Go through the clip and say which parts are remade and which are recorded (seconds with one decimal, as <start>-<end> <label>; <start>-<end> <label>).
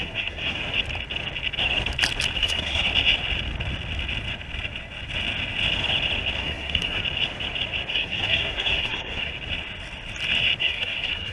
0.0-0.6 remade; 0.6-2.4 recorded; 2.4-2.9 remade; 2.9-6.4 recorded; 6.4-7.0 remade; 7.0-7.9 recorded; 7.9-9.3 remade; 9.3-10.6 recorded; 10.6-11.3 remade